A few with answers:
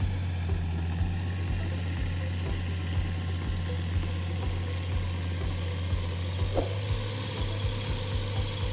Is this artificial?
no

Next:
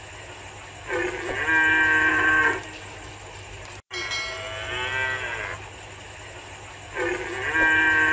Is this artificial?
no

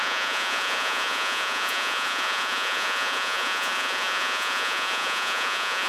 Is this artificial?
yes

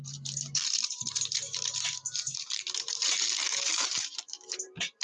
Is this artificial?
yes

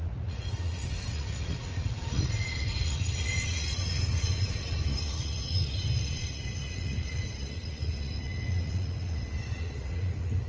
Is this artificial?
yes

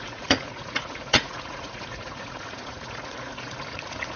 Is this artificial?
yes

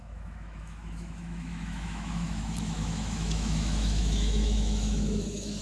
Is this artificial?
yes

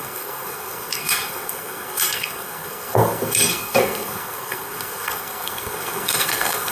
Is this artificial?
yes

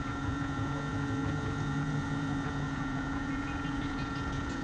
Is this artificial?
yes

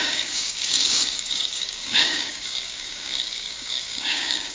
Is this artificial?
yes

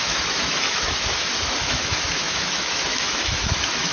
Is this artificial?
yes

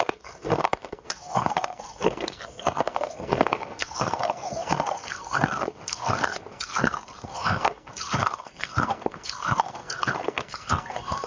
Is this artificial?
yes